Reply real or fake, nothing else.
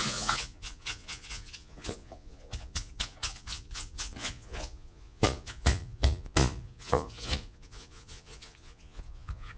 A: fake